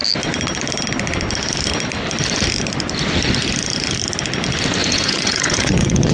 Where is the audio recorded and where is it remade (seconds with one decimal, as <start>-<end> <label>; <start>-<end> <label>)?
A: 0.0-4.8 recorded; 4.8-6.1 remade